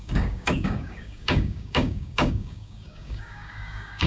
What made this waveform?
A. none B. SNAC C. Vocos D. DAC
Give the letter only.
D